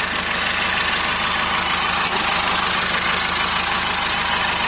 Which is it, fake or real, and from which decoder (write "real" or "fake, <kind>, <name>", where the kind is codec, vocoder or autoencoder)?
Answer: real